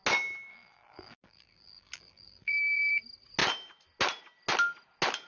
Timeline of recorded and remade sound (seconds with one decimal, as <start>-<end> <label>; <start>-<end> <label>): 0.0-0.5 recorded; 0.5-3.0 remade; 3.0-5.3 recorded